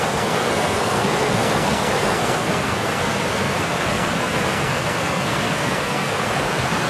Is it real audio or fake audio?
fake